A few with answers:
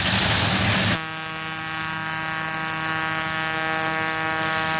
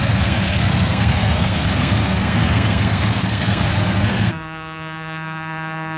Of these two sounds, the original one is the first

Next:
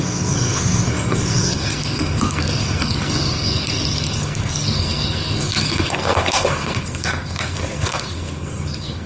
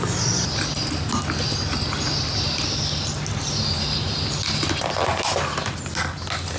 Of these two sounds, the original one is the second